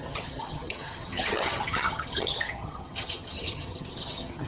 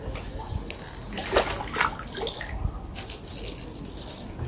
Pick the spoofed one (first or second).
first